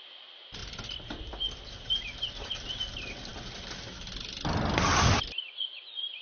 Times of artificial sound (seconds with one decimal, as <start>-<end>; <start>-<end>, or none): none